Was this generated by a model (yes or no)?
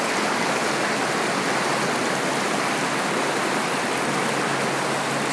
no